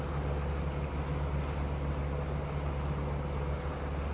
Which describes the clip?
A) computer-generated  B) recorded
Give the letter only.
B